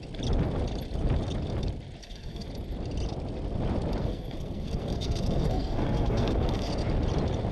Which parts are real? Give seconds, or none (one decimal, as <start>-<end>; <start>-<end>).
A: 0.0-2.0; 2.5-4.0; 6.7-7.5